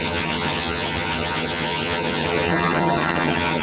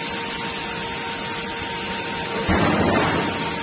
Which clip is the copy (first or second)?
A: first